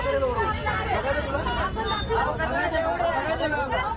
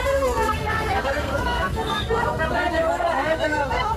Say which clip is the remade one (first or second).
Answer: second